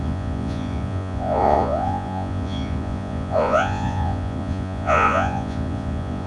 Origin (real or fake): fake